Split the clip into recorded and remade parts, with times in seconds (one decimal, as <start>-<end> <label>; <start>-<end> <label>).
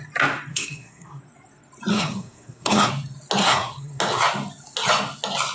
0.0-0.5 recorded; 0.5-1.2 remade; 1.2-1.9 recorded; 1.9-2.9 remade; 2.9-3.4 recorded; 3.4-4.0 remade; 4.0-5.5 recorded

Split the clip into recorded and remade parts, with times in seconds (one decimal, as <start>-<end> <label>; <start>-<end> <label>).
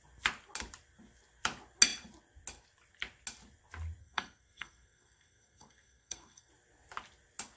0.0-4.0 recorded; 4.0-6.5 remade; 6.5-7.6 recorded